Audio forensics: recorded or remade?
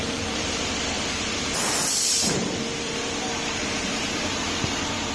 remade